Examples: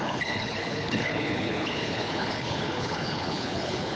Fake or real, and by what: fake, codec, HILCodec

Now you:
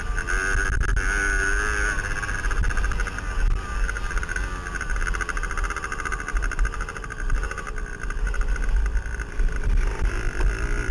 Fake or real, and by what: real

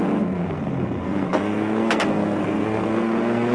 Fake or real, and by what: fake, codec, SNAC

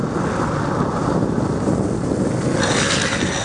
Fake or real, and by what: real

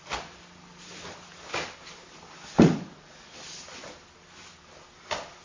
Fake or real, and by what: real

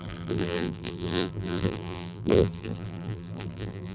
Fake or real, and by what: fake, vocoder, BigVGAN v2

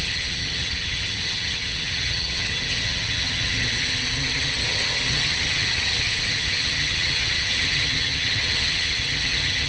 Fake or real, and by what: fake, vocoder, HiFi-GAN